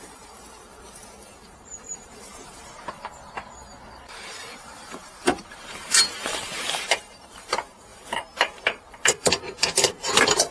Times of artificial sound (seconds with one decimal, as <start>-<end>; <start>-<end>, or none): 0.0-10.5